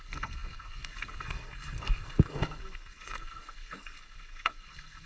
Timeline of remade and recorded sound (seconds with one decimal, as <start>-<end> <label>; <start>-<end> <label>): 0.0-5.1 remade